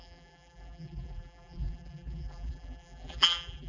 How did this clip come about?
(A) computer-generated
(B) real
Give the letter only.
A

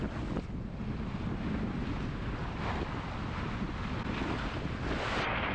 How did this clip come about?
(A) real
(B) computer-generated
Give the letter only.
A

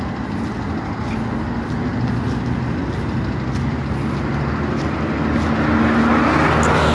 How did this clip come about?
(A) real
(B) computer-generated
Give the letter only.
A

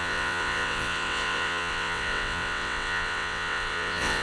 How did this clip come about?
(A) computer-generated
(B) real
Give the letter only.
A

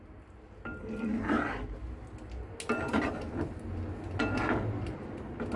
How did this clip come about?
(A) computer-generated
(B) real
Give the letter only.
B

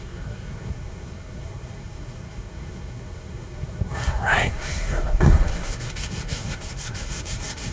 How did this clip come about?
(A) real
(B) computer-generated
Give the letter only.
B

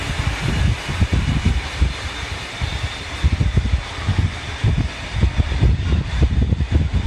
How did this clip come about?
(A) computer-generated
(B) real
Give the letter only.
B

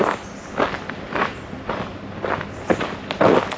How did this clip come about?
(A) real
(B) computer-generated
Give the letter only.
A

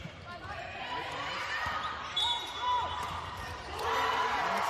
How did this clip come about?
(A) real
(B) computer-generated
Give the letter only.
B